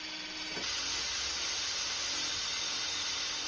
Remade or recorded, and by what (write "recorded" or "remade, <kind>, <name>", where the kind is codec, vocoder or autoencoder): recorded